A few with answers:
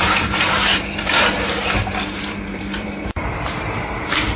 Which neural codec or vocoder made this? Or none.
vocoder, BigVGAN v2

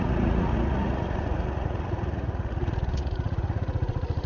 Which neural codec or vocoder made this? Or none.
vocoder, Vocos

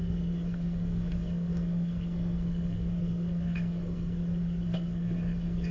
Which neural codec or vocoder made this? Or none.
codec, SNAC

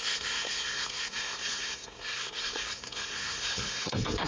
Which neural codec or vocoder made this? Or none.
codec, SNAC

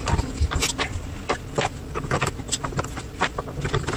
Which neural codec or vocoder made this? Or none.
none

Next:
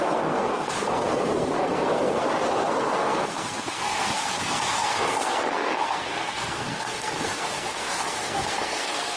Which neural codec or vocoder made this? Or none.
codec, SNAC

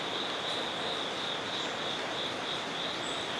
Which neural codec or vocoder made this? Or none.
none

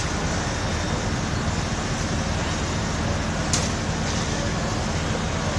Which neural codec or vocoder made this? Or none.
none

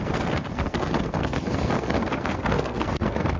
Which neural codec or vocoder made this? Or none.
codec, SNAC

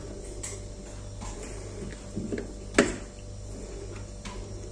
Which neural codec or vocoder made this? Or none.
none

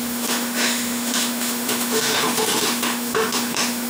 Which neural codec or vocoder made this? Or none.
autoencoder, DAC-VAE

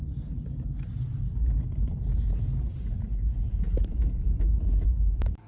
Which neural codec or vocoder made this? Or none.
none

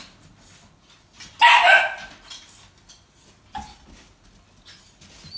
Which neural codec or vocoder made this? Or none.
none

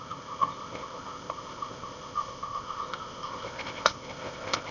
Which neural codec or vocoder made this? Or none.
codec, ZipCodec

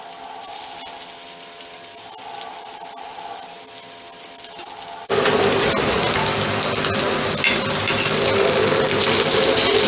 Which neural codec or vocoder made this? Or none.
none